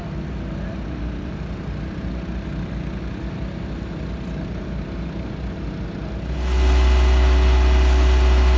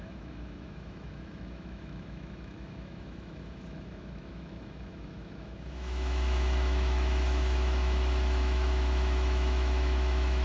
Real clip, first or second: first